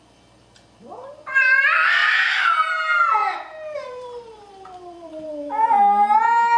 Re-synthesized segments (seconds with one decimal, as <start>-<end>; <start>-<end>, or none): 3.2-5.8